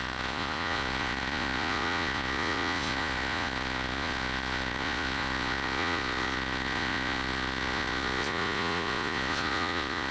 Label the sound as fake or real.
fake